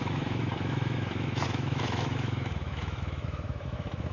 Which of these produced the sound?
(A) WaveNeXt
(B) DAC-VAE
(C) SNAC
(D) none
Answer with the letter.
B